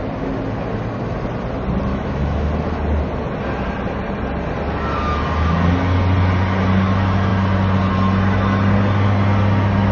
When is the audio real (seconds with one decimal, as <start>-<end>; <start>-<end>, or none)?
0.0-1.9; 2.5-9.9